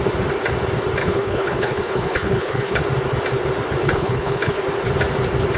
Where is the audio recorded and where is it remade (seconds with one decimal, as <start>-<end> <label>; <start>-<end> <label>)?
0.0-1.0 recorded; 1.0-2.8 remade; 2.8-3.8 recorded; 3.8-4.6 remade; 4.6-5.6 recorded